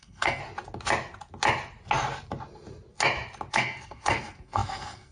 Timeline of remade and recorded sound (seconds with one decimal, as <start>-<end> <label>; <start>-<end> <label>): 0.0-0.4 remade; 0.4-3.5 recorded; 3.5-5.1 remade